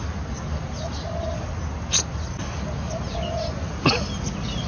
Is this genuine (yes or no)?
yes